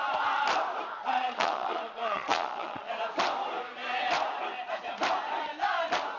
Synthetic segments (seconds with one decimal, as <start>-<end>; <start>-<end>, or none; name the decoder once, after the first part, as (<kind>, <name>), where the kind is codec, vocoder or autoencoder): 1.0-2.9 (vocoder, Vocos)